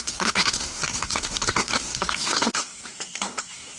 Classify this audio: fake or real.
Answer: fake